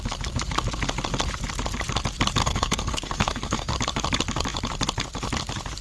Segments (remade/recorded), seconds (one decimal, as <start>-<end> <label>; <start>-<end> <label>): 0.0-2.4 recorded; 2.4-3.7 remade; 3.7-5.8 recorded